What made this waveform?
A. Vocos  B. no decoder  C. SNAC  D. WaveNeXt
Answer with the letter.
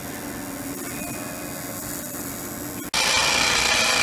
B